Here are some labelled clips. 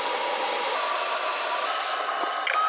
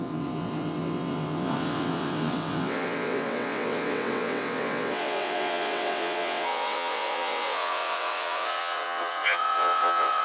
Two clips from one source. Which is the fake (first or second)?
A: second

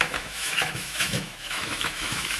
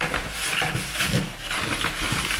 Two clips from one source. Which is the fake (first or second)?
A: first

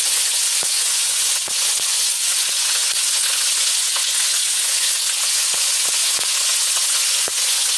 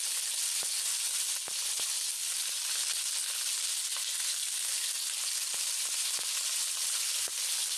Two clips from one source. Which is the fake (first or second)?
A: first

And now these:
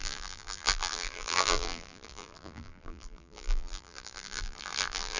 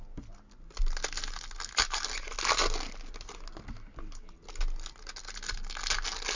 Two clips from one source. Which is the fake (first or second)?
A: first